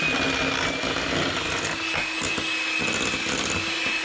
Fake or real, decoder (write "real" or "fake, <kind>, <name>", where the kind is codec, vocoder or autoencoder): real